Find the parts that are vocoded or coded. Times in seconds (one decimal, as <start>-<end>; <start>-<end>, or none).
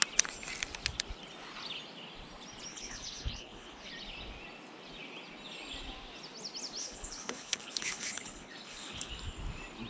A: 2.7-3.9; 6.8-9.1